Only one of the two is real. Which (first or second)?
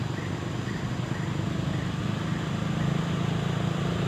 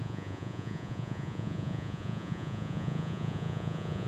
first